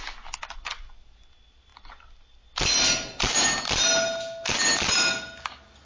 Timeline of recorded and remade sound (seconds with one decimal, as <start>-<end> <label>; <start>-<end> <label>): 0.0-5.8 recorded